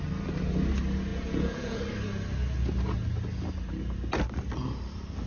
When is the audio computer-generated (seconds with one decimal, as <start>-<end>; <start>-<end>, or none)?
1.1-1.8

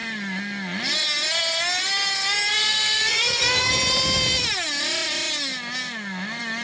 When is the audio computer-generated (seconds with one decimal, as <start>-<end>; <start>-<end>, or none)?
2.5-3.7

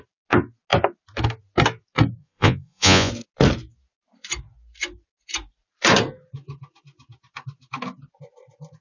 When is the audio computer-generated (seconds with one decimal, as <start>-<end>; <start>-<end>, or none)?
2.2-3.1

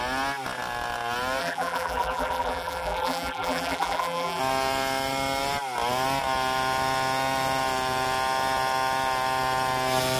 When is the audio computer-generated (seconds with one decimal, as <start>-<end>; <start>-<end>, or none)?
1.4-4.4

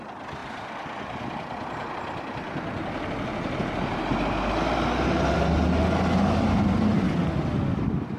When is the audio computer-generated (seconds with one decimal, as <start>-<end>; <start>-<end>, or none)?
none

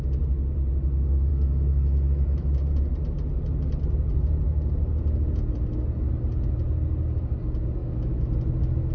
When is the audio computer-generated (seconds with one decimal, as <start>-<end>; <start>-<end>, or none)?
1.3-2.6; 7.8-8.3